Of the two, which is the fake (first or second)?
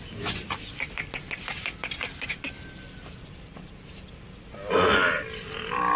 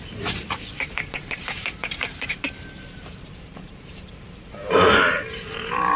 second